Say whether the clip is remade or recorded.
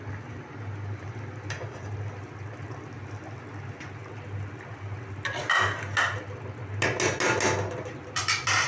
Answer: recorded